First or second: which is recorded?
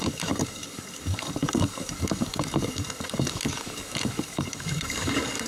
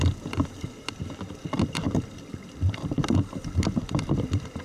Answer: second